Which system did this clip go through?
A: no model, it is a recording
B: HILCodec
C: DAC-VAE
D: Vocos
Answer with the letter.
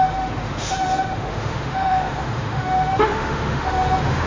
C